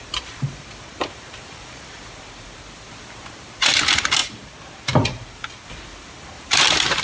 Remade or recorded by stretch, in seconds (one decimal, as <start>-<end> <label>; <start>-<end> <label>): 0.0-4.2 remade; 4.2-5.7 recorded; 5.7-7.0 remade